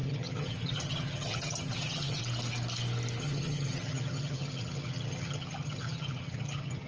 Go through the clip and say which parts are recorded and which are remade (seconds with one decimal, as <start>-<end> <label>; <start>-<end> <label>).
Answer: 0.0-2.2 remade; 2.2-3.2 recorded; 3.2-6.9 remade